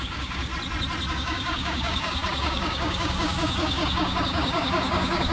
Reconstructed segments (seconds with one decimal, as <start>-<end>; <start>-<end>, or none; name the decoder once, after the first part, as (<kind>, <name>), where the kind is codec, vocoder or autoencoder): 0.0-0.5 (codec, DAC); 1.1-5.3